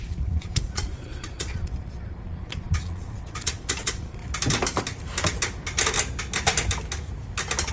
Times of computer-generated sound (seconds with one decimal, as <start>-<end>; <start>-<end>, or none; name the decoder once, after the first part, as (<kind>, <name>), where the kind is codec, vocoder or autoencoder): 0.0-4.2 (vocoder, Vocos)